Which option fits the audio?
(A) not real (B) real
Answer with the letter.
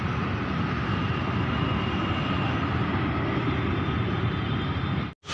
B